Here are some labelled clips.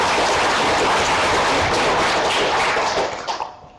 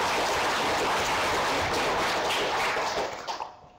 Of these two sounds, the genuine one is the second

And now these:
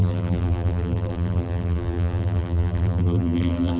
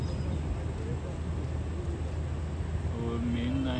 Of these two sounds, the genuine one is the second